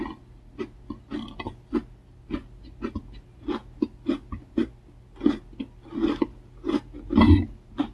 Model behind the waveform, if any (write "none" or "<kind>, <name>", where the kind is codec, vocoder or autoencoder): none